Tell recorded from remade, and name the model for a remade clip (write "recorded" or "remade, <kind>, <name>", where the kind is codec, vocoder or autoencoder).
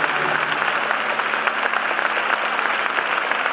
recorded